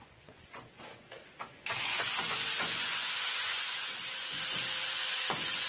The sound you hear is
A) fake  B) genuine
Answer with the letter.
A